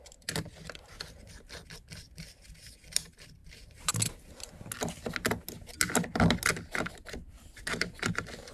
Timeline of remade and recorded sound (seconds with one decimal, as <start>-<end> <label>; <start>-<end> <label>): 0.0-3.4 recorded; 3.4-3.9 remade; 3.9-8.5 recorded